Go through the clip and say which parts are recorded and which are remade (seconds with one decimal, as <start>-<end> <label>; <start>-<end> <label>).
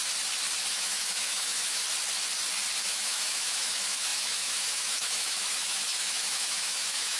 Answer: 0.0-0.7 recorded; 0.7-1.8 remade; 1.8-2.8 recorded; 2.8-7.2 remade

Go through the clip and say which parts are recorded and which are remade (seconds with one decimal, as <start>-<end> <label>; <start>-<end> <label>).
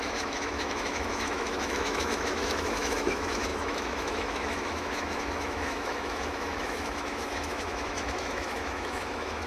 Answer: 0.0-9.5 remade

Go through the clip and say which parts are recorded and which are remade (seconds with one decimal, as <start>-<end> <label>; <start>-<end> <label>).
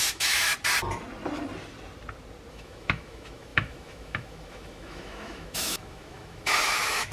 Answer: 0.0-0.5 remade; 0.5-2.5 recorded; 2.5-7.1 remade